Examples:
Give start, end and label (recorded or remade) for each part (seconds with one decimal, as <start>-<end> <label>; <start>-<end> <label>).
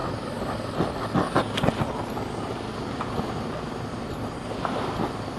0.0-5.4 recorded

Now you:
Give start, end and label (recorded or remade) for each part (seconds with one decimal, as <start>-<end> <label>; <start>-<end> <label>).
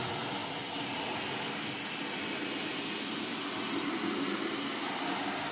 0.0-5.5 recorded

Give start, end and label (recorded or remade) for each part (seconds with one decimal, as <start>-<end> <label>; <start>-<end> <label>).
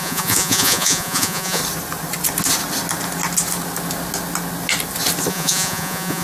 0.0-1.6 remade; 1.6-5.3 recorded; 5.3-6.2 remade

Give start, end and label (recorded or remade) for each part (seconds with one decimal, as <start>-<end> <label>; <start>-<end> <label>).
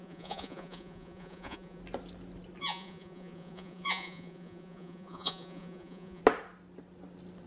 0.0-1.8 remade; 1.8-2.6 recorded; 2.6-6.2 remade; 6.2-7.5 recorded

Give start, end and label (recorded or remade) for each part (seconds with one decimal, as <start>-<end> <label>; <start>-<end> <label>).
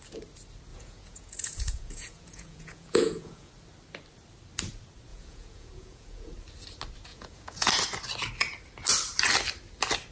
0.0-0.7 recorded; 0.7-3.5 remade; 3.5-5.1 recorded; 5.1-6.3 remade; 6.3-7.1 recorded; 7.1-7.7 remade; 7.7-10.1 recorded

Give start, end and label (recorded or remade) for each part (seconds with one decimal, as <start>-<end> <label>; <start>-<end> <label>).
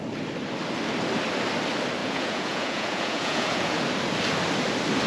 0.0-2.0 recorded; 2.0-3.8 remade; 3.8-5.1 recorded